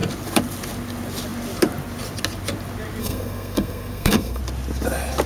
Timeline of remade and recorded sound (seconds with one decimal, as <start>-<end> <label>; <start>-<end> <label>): 0.0-3.0 recorded; 3.0-4.4 remade; 4.4-5.3 recorded